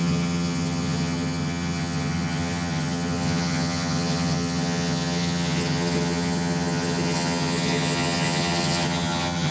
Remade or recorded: remade